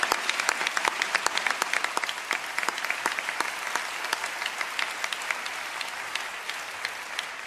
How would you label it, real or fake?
real